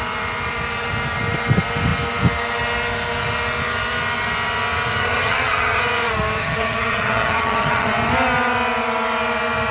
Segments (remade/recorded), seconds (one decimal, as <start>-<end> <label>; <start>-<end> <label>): 0.0-5.0 recorded; 5.0-5.8 remade; 5.8-6.4 recorded; 6.4-7.9 remade; 7.9-9.7 recorded